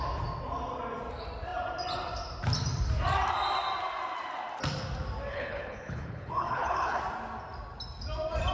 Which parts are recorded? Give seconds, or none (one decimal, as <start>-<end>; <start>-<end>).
0.0-5.3; 7.0-8.5